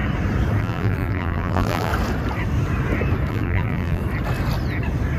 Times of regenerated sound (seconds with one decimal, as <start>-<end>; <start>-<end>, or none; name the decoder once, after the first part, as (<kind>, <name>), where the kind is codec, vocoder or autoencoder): 0.6-1.9 (vocoder, BigVGAN v2); 3.3-4.0